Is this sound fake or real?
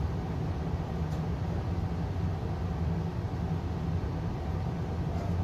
real